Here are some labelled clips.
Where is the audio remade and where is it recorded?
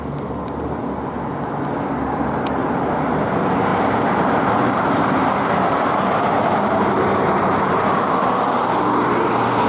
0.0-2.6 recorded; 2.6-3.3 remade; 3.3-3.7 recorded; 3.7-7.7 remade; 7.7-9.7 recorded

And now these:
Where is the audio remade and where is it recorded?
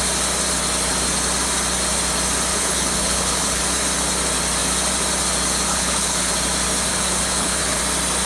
0.0-2.5 recorded; 2.5-3.6 remade; 3.6-5.7 recorded; 5.7-6.3 remade; 6.3-6.9 recorded; 6.9-7.8 remade; 7.8-8.3 recorded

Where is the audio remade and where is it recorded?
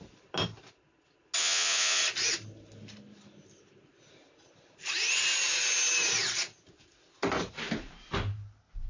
0.0-1.4 recorded; 1.4-2.0 remade; 2.0-8.9 recorded